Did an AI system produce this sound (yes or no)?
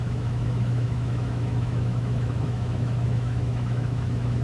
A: yes